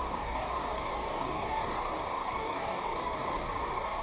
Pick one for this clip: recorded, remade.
remade